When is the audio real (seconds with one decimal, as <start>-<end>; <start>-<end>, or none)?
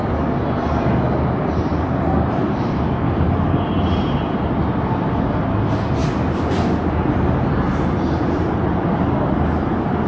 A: 0.0-1.7; 4.6-10.1